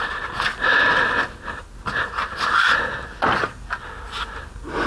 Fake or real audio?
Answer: real